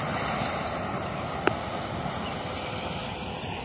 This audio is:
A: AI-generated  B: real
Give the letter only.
B